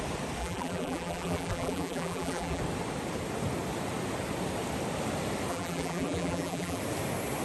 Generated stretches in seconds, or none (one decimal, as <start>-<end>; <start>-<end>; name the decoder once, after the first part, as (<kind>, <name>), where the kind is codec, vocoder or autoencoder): 0.4-2.6 (vocoder, BigVGAN v2); 5.5-6.8